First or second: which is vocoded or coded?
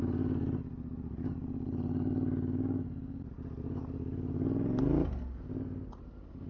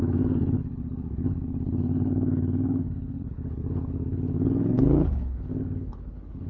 second